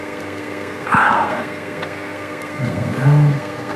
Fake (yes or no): yes